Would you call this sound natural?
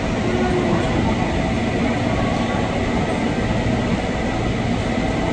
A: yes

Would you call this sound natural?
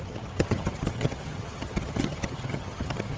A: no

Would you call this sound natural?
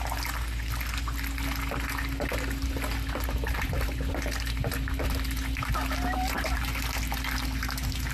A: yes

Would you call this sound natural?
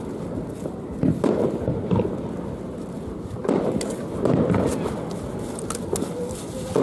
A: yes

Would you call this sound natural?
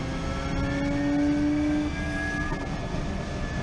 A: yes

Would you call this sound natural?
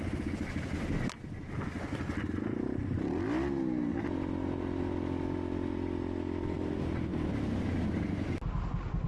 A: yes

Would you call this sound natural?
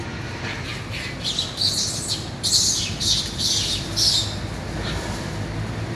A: yes